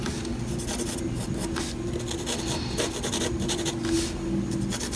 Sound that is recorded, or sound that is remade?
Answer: recorded